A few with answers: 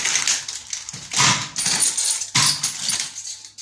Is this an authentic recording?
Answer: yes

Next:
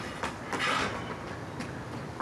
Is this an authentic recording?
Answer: yes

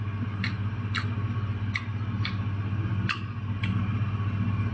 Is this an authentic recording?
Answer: yes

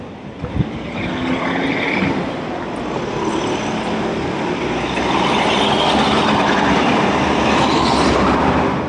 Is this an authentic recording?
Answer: yes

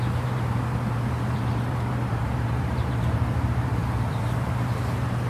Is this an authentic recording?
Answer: no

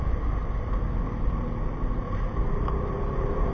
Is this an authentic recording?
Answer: yes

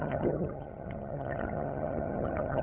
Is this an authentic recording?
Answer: no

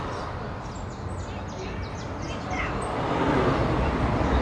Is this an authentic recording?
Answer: yes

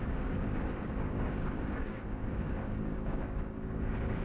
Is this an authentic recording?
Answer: no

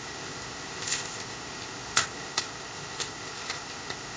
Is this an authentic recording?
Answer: no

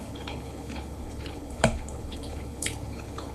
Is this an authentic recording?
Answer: no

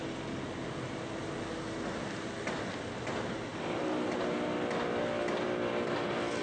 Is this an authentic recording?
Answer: yes